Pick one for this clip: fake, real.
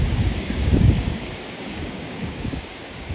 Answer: fake